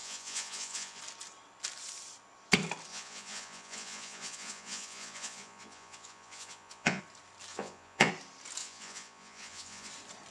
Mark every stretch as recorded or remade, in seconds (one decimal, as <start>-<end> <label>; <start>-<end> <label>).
0.0-1.0 remade; 1.0-2.9 recorded; 2.9-7.0 remade; 7.0-7.5 recorded; 7.5-8.1 remade; 8.1-8.6 recorded; 8.6-9.9 remade; 9.9-10.3 recorded